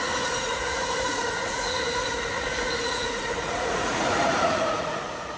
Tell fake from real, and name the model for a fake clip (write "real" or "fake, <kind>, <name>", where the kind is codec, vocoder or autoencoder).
fake, vocoder, Vocos